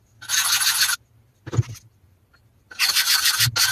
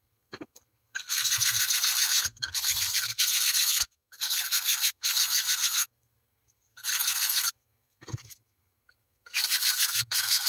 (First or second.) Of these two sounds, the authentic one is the first